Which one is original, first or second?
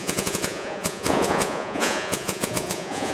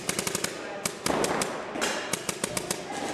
second